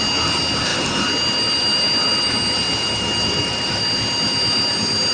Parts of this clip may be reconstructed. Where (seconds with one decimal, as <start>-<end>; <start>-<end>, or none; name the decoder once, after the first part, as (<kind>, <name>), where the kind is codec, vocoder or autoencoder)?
0.7-3.8 (vocoder, BigVGAN v2)